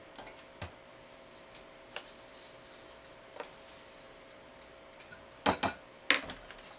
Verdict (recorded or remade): recorded